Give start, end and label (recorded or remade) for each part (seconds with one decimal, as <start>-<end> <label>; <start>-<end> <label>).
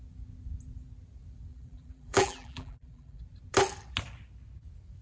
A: 0.0-1.5 recorded; 1.5-3.2 remade; 3.2-5.0 recorded